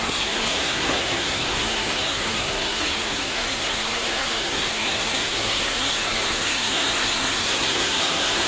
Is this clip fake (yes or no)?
yes